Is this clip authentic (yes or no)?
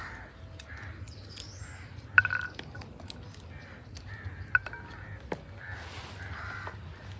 yes